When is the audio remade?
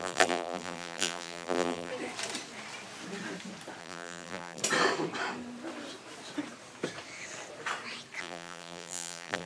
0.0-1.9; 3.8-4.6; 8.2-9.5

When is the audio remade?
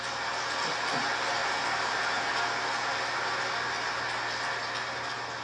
1.4-2.3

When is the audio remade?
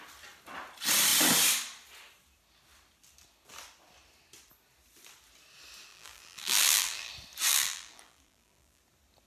5.9-7.1; 7.5-8.8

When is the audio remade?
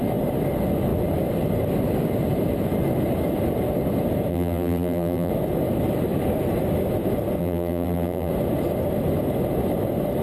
4.3-5.3; 7.4-8.3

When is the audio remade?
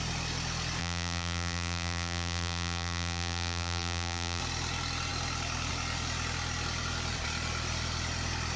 0.8-4.4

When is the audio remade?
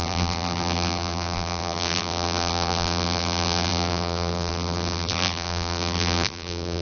0.0-6.8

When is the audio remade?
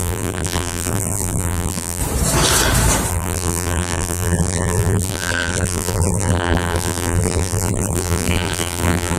0.0-2.0; 3.1-9.2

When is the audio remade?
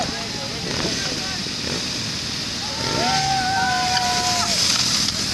none